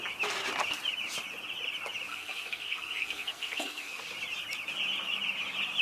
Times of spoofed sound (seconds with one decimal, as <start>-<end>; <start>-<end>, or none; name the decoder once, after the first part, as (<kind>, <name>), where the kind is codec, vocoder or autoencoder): 2.1-4.0 (codec, SNAC)